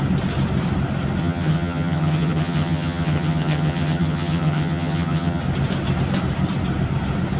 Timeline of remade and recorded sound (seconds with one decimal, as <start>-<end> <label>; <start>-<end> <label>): 0.0-1.2 recorded; 1.2-5.4 remade; 5.4-7.4 recorded